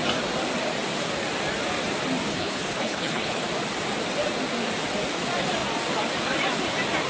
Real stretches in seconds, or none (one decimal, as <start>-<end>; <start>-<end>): 0.0-2.3; 3.4-7.1

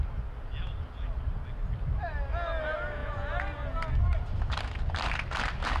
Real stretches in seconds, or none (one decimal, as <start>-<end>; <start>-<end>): 0.0-5.8

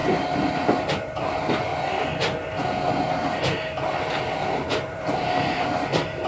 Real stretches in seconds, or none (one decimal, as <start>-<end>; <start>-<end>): 0.0-0.9; 1.7-4.4

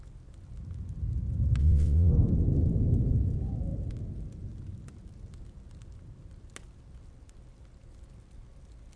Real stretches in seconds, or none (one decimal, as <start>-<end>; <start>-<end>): 0.0-1.6; 2.1-9.0

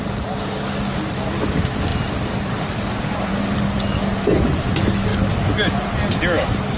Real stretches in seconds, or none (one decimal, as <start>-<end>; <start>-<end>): 0.0-6.8

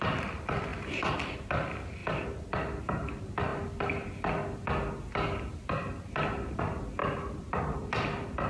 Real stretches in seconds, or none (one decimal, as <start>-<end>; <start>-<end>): 0.0-0.7; 1.3-2.0; 2.8-7.0; 7.9-8.5